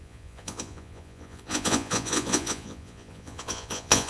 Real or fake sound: fake